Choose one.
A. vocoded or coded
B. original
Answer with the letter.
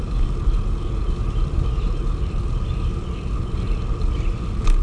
B